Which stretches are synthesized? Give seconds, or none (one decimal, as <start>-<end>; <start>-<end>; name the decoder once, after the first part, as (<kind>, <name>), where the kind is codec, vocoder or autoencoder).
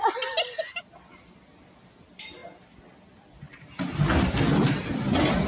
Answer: none